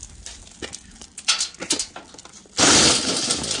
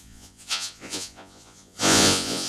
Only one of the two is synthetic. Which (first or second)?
second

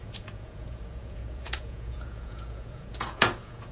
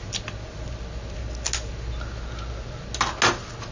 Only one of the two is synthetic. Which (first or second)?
first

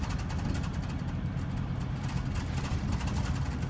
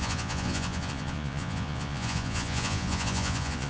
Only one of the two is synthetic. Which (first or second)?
second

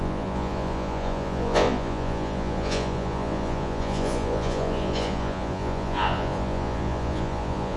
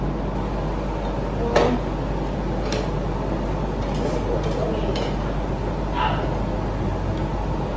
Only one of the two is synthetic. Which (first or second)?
first